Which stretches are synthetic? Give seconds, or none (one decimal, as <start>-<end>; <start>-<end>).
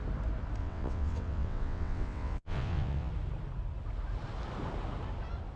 0.6-3.1